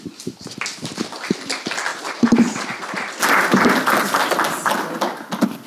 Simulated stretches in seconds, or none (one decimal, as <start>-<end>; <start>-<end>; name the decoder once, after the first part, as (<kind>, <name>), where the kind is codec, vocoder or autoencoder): none